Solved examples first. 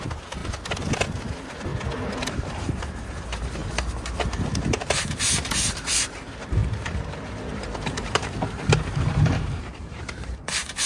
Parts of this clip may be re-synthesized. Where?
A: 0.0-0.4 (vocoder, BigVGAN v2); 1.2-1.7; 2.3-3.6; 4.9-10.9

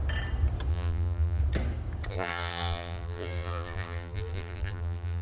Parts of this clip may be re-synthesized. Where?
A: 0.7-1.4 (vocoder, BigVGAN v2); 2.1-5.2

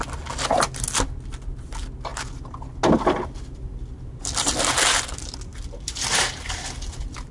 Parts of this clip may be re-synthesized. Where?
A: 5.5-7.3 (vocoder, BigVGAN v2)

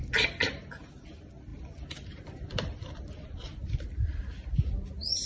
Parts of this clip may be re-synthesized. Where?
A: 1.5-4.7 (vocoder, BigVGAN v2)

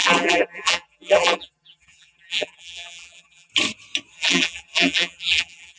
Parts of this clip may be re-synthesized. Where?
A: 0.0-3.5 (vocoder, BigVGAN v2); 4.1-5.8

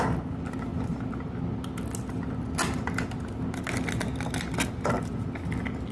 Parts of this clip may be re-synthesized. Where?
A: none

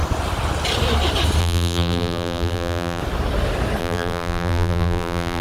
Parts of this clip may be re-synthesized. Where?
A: 1.4-3.0 (vocoder, BigVGAN v2); 3.8-5.4